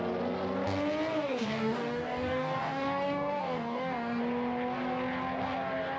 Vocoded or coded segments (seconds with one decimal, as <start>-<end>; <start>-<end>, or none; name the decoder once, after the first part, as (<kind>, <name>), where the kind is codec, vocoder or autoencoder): 1.2-4.2 (codec, DAC)

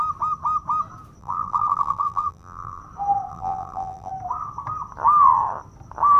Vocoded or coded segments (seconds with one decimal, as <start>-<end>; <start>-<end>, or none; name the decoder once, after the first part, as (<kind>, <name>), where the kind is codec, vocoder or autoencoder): 1.2-2.8 (vocoder, BigVGAN v2); 3.3-4.1

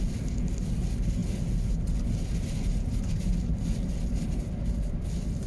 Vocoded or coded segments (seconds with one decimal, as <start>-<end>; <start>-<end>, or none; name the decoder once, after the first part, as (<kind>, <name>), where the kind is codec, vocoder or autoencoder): none

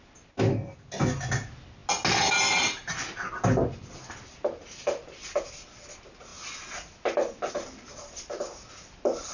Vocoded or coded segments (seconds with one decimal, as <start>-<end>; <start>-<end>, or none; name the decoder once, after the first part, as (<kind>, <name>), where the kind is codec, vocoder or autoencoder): none

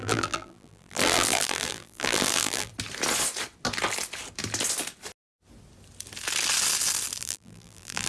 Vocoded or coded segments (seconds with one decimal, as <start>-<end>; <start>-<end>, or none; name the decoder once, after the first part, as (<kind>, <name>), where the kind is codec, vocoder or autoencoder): 0.0-2.7 (vocoder, BigVGAN v2); 7.2-8.1

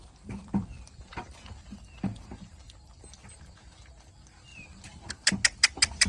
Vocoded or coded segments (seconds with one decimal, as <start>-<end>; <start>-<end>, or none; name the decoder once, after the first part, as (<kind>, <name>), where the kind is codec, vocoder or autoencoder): 0.0-1.1 (vocoder, BigVGAN v2); 4.5-5.1

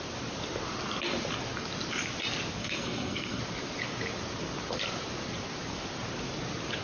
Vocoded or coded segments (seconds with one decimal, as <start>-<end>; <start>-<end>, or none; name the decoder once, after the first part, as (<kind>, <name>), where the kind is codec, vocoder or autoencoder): 2.6-3.4 (codec, SNAC)